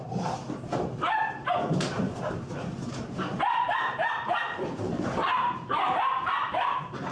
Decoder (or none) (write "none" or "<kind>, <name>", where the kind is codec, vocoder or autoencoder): vocoder, BigVGAN v2